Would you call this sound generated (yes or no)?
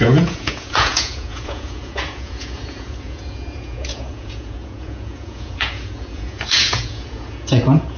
yes